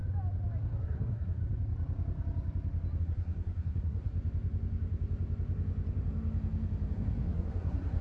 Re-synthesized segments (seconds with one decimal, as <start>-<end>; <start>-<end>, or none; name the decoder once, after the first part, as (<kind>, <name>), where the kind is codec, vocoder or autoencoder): 0.8-1.4 (codec, SNAC); 3.0-4.1; 6.9-8.0